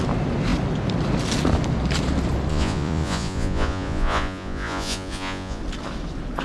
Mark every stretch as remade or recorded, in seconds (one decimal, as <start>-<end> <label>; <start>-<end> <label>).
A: 0.0-2.5 recorded; 2.5-5.6 remade; 5.6-6.4 recorded